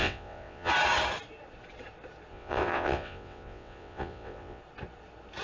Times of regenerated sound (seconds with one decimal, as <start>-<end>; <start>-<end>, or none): 0.0-0.7; 2.3-4.6